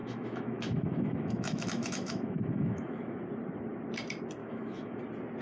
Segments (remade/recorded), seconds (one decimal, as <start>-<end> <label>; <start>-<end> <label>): 0.0-3.2 remade; 3.2-4.4 recorded; 4.4-5.0 remade; 5.0-5.4 recorded